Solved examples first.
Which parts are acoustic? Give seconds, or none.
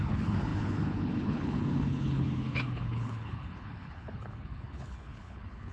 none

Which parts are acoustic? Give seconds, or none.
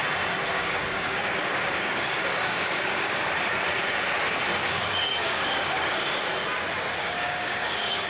0.0-0.5; 3.2-4.7; 6.3-7.0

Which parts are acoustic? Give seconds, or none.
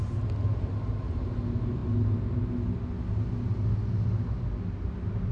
0.0-5.3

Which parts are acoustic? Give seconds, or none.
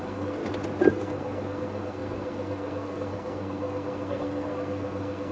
0.4-0.9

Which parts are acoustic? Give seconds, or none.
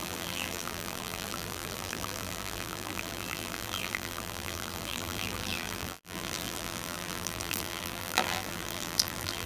none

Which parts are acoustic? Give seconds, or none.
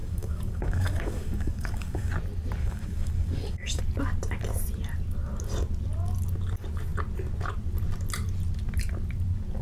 2.1-2.6; 3.8-9.6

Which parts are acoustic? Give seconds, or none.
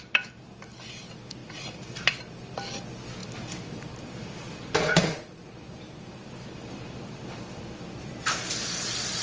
0.0-1.4; 2.2-3.2; 7.6-9.2